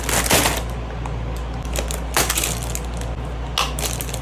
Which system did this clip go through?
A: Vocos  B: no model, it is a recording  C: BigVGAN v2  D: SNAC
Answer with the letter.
B